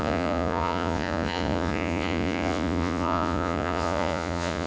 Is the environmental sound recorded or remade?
remade